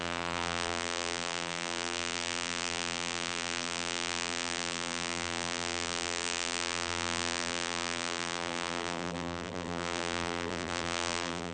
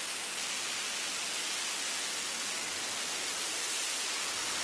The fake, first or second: first